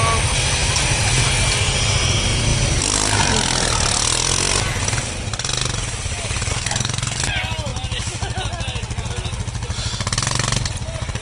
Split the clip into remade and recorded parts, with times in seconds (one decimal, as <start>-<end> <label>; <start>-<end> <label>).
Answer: 0.0-6.5 recorded; 6.5-7.2 remade; 7.2-11.2 recorded